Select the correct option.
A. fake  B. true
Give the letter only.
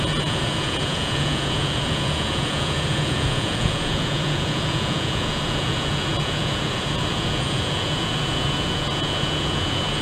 A